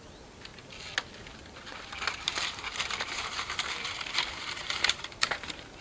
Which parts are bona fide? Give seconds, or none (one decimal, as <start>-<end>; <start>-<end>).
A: 0.5-1.3